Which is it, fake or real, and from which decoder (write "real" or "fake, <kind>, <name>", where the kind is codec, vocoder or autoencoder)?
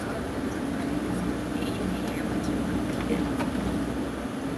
real